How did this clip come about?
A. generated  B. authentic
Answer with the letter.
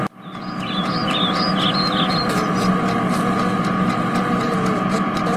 B